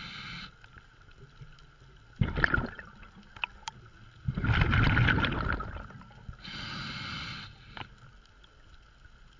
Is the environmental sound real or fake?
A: real